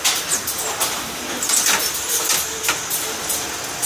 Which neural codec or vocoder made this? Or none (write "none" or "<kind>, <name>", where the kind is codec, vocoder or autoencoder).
none